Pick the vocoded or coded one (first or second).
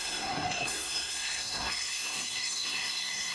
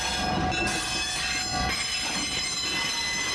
first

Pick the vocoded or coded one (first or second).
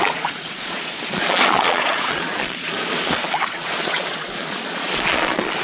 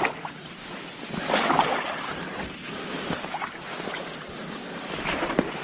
first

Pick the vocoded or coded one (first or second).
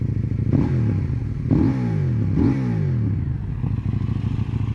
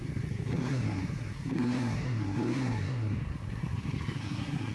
second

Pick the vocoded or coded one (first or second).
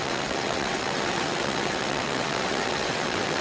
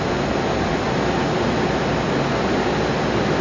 first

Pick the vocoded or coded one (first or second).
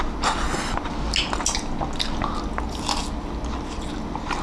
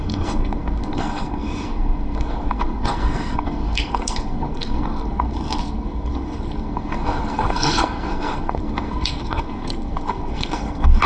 second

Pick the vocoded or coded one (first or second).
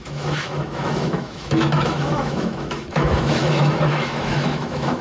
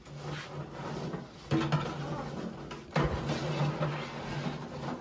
first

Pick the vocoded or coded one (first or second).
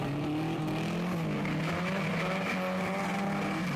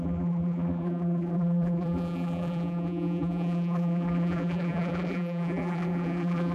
second